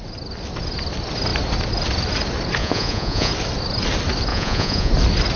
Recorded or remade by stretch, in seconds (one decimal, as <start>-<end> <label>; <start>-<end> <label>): 0.0-2.6 recorded; 2.6-3.3 remade; 3.3-4.3 recorded; 4.3-4.9 remade; 4.9-5.4 recorded